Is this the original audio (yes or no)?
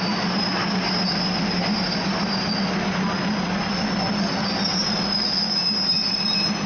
yes